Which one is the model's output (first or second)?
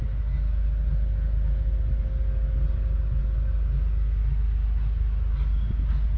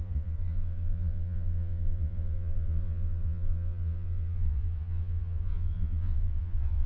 second